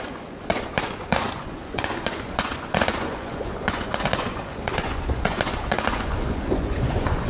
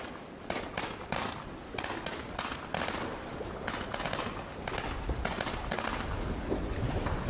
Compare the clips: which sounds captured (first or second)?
second